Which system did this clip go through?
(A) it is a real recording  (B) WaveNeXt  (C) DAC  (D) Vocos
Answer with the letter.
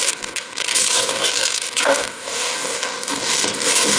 C